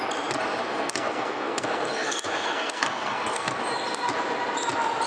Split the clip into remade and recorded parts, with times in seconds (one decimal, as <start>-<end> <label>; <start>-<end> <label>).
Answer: 0.0-0.6 recorded; 0.6-3.6 remade; 3.6-5.1 recorded